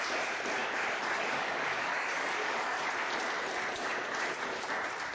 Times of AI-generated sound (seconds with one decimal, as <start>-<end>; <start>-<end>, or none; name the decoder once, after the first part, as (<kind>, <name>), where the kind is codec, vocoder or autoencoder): 0.6-2.8 (codec, DAC)

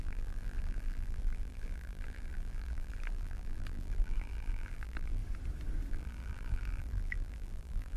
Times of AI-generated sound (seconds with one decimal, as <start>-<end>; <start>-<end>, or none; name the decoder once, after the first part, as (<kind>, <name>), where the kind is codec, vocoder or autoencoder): 0.0-5.2 (vocoder, BigVGAN v2); 5.9-8.0

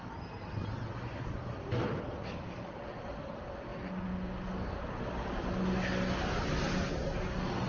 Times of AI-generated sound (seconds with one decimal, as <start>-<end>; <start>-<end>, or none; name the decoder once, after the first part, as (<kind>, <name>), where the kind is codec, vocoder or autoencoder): none